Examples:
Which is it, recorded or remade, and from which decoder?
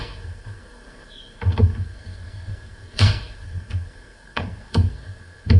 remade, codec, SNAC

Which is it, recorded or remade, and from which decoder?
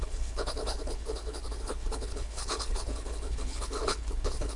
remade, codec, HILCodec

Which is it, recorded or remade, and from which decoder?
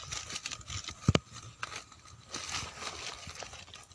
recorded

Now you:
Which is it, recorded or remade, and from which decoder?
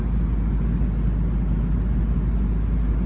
recorded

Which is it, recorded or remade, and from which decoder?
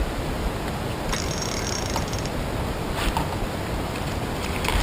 remade, vocoder, BigVGAN v2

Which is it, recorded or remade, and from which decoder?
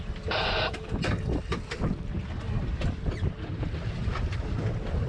remade, vocoder, BigVGAN v2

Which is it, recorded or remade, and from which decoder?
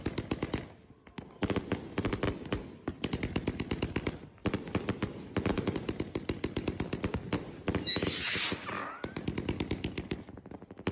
recorded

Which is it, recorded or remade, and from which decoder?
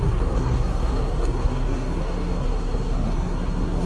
remade, codec, SNAC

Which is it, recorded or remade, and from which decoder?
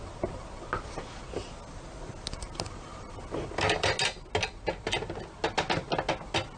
recorded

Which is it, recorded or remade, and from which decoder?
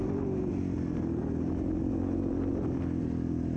recorded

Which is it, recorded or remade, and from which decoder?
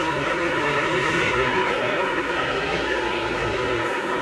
remade, codec, SNAC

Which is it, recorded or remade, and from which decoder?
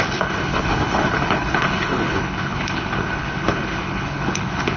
remade, codec, HILCodec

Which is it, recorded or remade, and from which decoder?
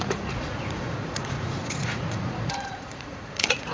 remade, vocoder, Vocos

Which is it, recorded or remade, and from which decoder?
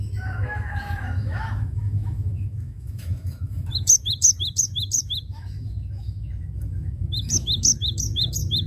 remade, autoencoder, DAC-VAE